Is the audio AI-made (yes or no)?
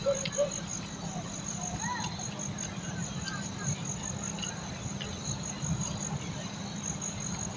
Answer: no